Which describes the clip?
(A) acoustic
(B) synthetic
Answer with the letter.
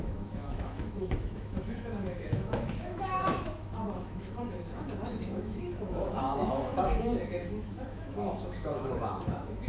B